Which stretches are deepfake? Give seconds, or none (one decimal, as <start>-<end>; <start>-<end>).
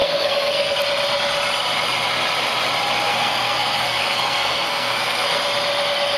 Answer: 0.0-0.8; 3.1-5.4